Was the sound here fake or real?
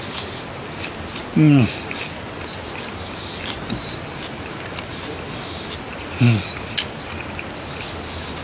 real